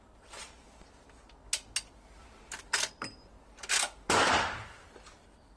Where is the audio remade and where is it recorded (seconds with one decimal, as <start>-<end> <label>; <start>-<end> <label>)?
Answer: 0.0-5.6 recorded